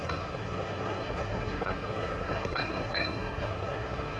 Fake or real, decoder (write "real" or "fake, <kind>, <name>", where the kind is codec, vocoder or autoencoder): fake, codec, SNAC